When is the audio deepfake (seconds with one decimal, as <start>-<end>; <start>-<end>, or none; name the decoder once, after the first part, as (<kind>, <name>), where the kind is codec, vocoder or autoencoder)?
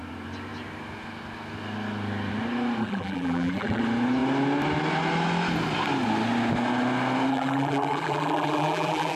2.8-3.8 (vocoder, BigVGAN v2); 7.3-9.2